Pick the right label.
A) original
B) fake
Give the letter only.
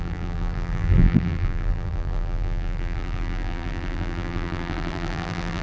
B